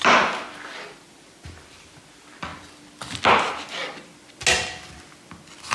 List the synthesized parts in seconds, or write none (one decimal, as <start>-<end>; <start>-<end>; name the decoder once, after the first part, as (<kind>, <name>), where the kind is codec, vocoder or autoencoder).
none